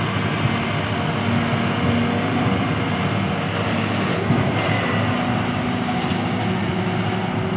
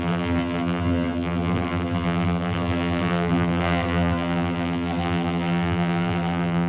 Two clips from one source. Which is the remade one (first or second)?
second